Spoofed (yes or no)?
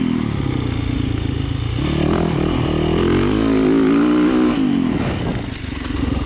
no